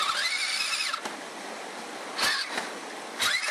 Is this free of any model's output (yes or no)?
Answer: yes